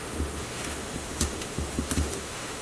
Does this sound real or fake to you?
fake